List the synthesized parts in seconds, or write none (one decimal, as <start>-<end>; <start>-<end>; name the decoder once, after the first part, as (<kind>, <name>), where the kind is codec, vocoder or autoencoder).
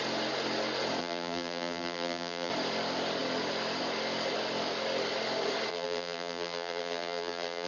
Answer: 1.0-2.5 (vocoder, BigVGAN v2); 5.7-7.7